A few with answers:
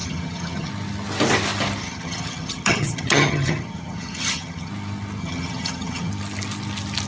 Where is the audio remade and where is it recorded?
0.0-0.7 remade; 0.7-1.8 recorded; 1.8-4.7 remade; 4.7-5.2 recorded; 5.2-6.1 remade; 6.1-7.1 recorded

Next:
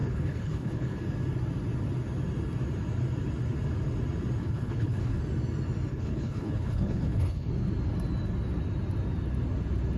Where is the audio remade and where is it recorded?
0.0-1.0 remade; 1.0-4.4 recorded; 4.4-5.2 remade; 5.2-5.9 recorded; 5.9-7.5 remade; 7.5-10.0 recorded

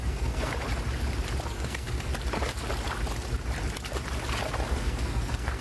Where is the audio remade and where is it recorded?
0.0-0.5 remade; 0.5-1.4 recorded; 1.4-2.1 remade; 2.1-4.7 recorded; 4.7-5.6 remade

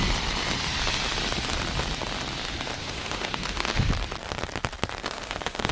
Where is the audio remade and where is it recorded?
0.0-2.8 recorded; 2.8-3.9 remade; 3.9-5.0 recorded; 5.0-5.7 remade